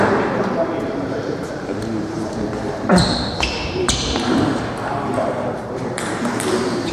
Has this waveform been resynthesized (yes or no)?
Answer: yes